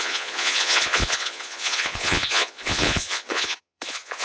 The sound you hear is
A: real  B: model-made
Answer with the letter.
B